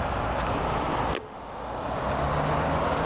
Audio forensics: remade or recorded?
recorded